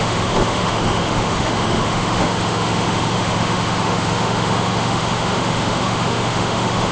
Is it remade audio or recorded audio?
remade